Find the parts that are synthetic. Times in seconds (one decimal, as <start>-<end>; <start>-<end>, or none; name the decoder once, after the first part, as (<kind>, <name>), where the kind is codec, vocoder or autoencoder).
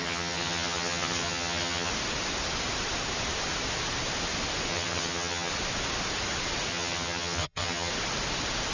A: 0.0-1.9 (vocoder, HiFi-GAN); 4.7-5.5; 6.7-7.9